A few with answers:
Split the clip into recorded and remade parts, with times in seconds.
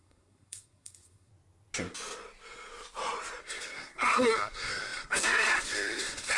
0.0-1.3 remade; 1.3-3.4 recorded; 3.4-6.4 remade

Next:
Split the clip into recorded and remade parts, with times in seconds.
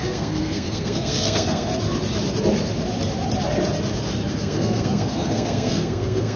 0.0-1.7 remade; 1.7-4.3 recorded; 4.3-6.4 remade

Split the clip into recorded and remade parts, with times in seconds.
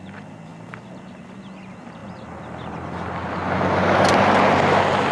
0.0-5.1 recorded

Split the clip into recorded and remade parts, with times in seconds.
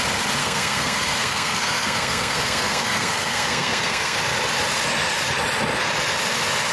0.0-0.4 recorded; 0.4-4.2 remade; 4.2-6.7 recorded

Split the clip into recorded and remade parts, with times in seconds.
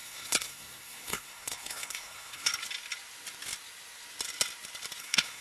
0.0-2.5 remade; 2.5-5.0 recorded; 5.0-5.4 remade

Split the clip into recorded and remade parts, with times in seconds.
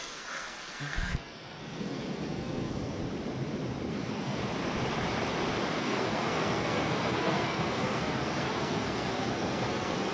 0.0-3.0 remade; 3.0-3.9 recorded; 3.9-4.4 remade; 4.4-5.8 recorded; 5.8-10.1 remade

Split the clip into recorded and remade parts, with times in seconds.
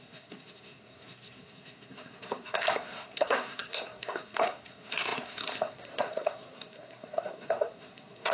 0.0-8.3 remade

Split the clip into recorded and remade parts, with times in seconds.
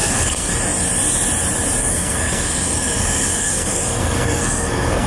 0.0-0.5 remade; 0.5-1.8 recorded; 1.8-5.1 remade